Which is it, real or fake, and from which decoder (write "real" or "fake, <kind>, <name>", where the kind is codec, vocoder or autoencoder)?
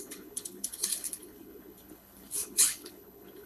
fake, codec, HILCodec